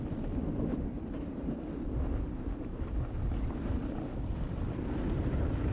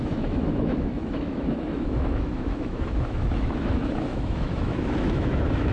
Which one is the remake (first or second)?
second